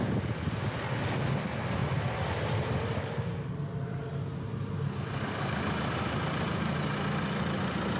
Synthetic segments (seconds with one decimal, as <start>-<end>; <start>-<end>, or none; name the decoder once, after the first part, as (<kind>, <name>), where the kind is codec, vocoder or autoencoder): none